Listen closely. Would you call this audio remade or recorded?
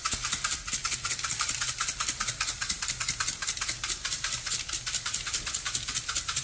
remade